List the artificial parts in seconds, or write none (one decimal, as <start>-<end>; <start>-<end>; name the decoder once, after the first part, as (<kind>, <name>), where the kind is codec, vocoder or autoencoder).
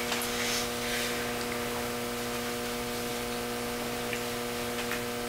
3.1-4.1 (vocoder, BigVGAN v2)